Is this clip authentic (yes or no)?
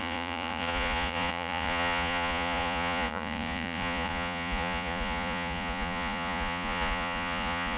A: no